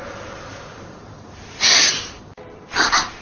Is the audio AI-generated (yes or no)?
yes